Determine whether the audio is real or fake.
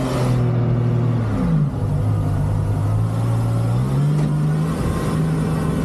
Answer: real